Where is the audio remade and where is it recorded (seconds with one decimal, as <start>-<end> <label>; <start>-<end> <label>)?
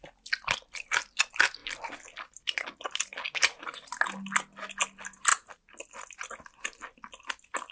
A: 0.0-7.7 recorded